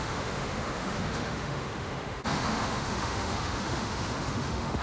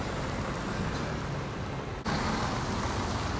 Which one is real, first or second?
second